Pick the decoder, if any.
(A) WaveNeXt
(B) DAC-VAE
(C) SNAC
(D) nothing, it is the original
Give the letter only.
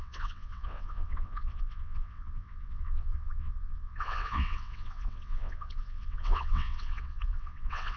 A